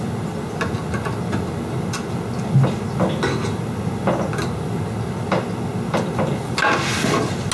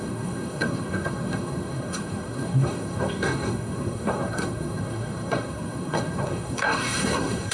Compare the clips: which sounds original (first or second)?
first